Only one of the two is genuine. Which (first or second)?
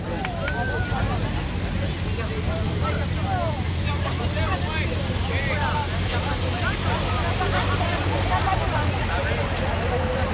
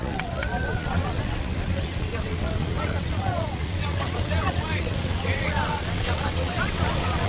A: first